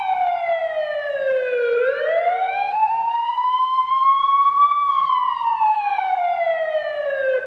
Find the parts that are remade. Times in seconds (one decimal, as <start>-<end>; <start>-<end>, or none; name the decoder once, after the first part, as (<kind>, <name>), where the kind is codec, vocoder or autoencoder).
2.3-5.1 (codec, SNAC); 5.7-6.2